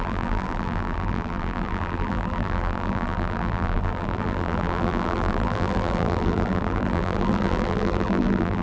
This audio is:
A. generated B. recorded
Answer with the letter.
A